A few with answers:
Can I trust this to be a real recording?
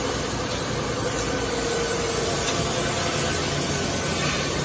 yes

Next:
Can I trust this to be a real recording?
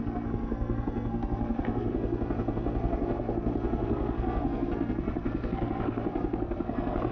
no